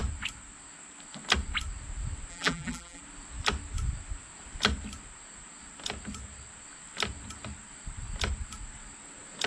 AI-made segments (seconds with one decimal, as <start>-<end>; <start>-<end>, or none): 2.3-3.0